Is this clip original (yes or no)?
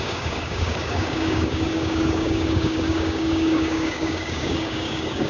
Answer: no